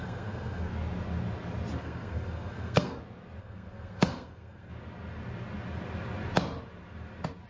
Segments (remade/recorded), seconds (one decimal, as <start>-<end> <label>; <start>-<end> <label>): 0.0-0.7 remade; 0.7-1.8 recorded; 1.8-3.0 remade; 3.0-3.4 recorded; 3.4-4.7 remade; 4.7-7.5 recorded